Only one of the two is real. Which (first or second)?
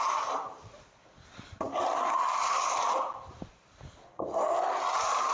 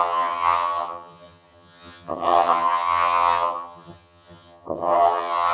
first